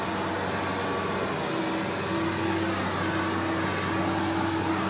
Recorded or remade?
recorded